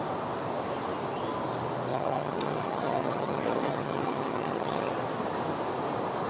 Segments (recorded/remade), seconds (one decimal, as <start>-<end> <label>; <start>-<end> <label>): 0.0-1.9 recorded; 1.9-4.9 remade; 4.9-6.3 recorded